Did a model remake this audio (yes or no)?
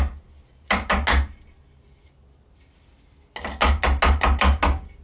no